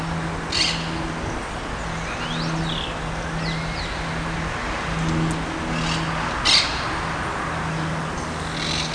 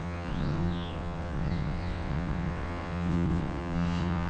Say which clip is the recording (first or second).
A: first